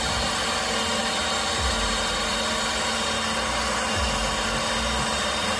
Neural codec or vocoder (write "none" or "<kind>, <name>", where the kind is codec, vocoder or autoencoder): none